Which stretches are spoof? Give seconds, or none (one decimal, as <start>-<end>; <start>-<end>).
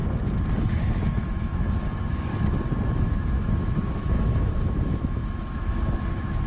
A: 0.7-2.3; 2.9-6.5